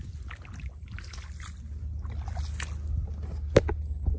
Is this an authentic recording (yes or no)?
yes